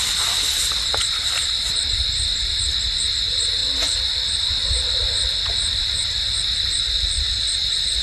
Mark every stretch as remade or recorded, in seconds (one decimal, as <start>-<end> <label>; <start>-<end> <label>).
0.0-8.0 recorded